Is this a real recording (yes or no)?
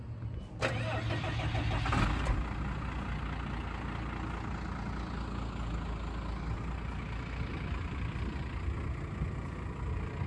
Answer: yes